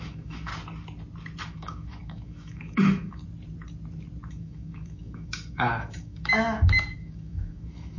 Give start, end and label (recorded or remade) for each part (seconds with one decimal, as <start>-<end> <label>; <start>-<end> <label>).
0.0-0.5 remade; 0.5-1.4 recorded; 1.4-3.2 remade; 3.2-4.3 recorded; 4.3-8.0 remade